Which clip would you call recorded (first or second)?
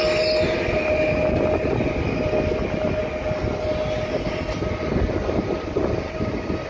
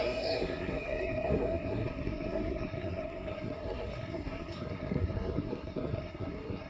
first